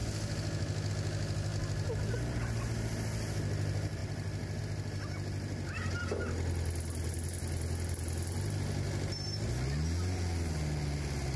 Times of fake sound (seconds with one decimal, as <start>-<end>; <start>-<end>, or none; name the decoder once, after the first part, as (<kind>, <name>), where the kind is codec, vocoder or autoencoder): 4.0-4.6 (vocoder, BigVGAN v2)